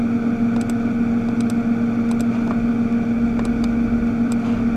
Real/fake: real